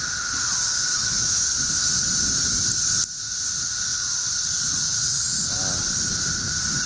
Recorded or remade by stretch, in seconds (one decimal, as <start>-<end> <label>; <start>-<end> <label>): 0.0-0.8 recorded; 0.8-1.4 remade; 1.4-6.9 recorded